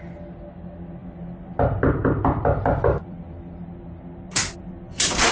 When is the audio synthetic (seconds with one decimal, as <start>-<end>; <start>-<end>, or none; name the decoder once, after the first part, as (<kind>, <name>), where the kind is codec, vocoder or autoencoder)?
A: 1.0-3.5 (vocoder, BigVGAN v2)